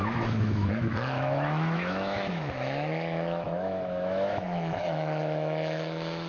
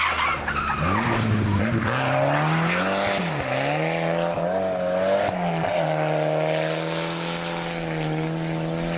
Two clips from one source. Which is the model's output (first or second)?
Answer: first